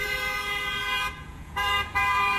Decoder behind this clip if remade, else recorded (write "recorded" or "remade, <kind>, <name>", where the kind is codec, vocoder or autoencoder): remade, vocoder, Vocos